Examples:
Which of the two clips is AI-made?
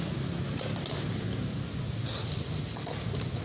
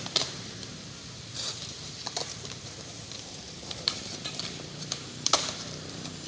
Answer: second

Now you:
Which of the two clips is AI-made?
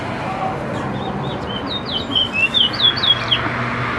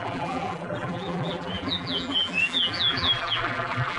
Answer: second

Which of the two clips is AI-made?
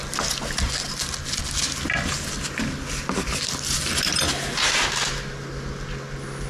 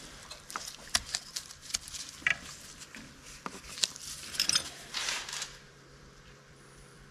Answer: second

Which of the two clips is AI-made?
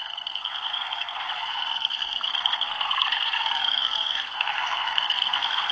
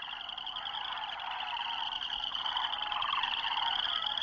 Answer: first